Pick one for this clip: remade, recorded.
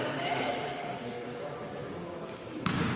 remade